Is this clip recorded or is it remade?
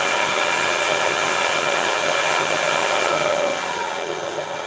remade